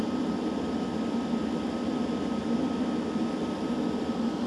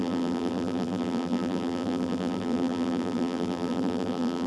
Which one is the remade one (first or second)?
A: second